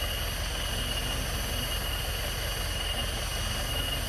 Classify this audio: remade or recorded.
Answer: recorded